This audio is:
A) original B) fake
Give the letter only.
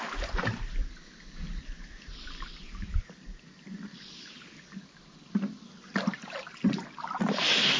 A